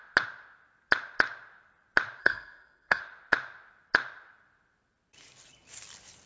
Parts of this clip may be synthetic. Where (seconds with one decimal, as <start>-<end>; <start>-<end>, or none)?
2.2-3.0